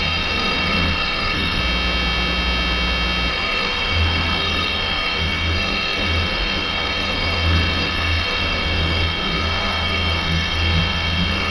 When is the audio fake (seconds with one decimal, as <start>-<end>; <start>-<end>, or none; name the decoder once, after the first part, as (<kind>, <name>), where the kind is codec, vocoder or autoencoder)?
0.0-1.6 (codec, SNAC); 3.3-11.5